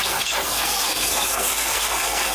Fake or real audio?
fake